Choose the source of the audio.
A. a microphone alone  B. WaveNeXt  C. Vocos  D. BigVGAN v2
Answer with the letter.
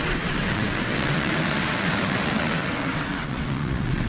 B